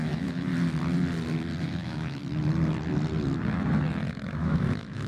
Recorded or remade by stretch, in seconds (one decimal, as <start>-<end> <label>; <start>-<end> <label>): 0.0-0.5 remade; 0.5-1.6 recorded; 1.6-2.2 remade; 2.2-4.1 recorded; 4.1-5.1 remade